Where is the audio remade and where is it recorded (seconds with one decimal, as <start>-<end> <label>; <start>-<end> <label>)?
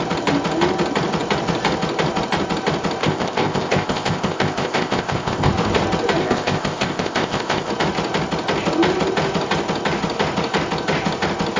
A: 0.0-3.0 recorded; 3.0-5.5 remade; 5.5-6.2 recorded; 6.2-7.7 remade; 7.7-11.6 recorded